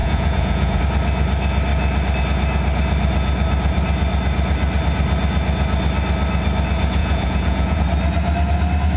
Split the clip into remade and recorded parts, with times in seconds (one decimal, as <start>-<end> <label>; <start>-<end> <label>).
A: 0.0-0.8 remade; 0.8-7.0 recorded; 7.0-7.8 remade; 7.8-9.0 recorded